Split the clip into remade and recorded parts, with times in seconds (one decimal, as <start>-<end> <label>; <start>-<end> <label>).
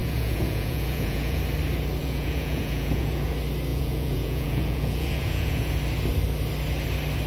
0.0-1.4 remade; 1.4-2.0 recorded; 2.0-3.3 remade; 3.3-3.7 recorded; 3.7-5.7 remade; 5.7-7.3 recorded